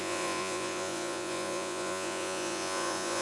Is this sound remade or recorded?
remade